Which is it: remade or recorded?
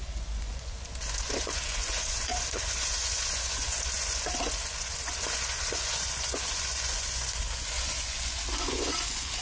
remade